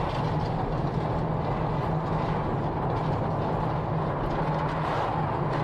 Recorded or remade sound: recorded